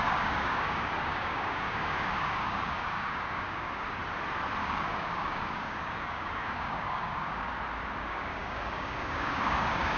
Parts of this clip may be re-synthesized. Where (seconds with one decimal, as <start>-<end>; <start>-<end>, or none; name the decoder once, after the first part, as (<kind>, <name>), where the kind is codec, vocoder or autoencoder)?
0.0-4.0 (codec, DAC); 4.6-7.5; 8.0-10.0